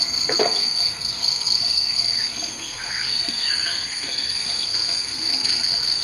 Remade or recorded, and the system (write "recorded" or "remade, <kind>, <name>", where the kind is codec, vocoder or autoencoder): remade, codec, SNAC